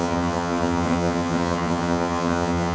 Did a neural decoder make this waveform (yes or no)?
yes